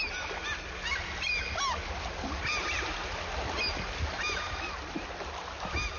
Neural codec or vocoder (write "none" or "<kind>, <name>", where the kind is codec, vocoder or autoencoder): none